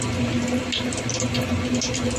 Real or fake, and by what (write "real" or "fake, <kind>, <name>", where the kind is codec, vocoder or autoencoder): real